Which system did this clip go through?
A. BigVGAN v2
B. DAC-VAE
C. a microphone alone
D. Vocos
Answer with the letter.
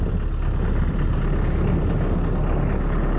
C